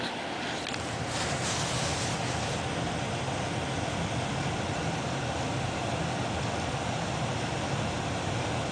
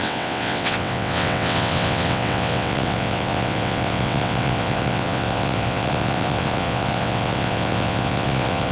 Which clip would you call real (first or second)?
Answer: first